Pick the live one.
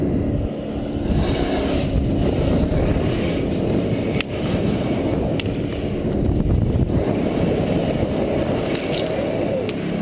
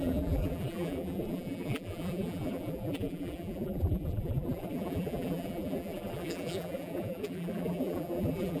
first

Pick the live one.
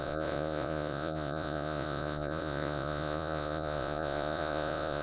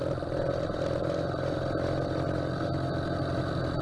second